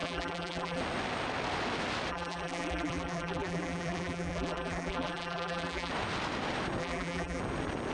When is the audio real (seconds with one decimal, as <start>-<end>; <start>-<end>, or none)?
0.8-2.1; 5.9-6.8; 7.4-7.9